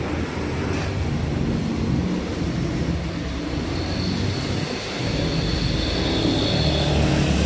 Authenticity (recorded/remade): recorded